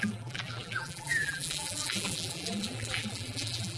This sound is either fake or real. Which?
fake